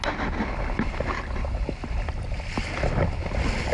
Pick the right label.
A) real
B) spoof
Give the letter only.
A